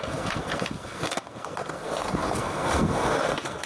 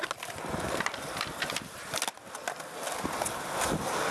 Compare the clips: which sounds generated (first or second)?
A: first